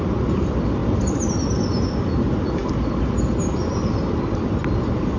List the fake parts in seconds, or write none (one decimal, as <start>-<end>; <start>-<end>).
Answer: none